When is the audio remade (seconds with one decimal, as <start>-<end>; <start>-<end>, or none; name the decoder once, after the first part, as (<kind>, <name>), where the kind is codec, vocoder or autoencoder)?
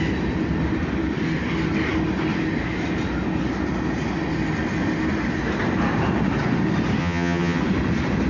7.0-7.6 (vocoder, HiFi-GAN)